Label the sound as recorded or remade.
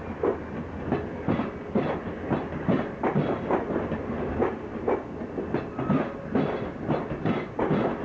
recorded